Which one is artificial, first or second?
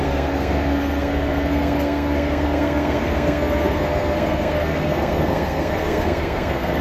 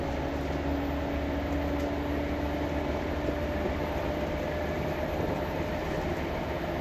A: first